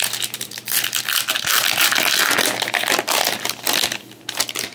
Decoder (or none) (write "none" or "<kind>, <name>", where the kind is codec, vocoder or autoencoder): none